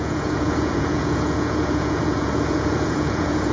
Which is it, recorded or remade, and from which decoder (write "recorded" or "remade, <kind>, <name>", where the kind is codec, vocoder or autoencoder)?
remade, vocoder, Vocos